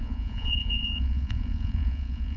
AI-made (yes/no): yes